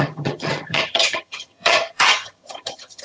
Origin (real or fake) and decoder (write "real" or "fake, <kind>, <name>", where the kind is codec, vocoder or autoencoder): fake, vocoder, HiFi-GAN